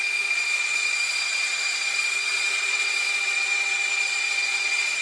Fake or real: fake